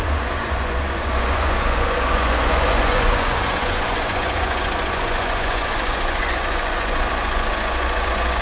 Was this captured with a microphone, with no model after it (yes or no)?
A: no